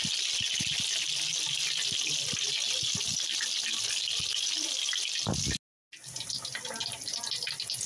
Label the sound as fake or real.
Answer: real